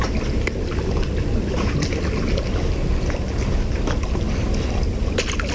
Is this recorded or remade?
recorded